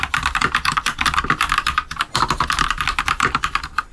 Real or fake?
real